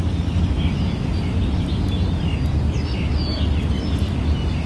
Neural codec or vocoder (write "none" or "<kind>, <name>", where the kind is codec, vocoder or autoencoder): none